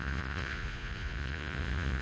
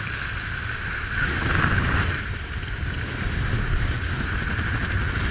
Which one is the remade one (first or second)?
first